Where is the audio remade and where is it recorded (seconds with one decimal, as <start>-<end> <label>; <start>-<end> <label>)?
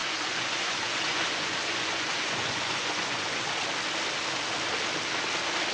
0.0-3.4 remade; 3.4-5.7 recorded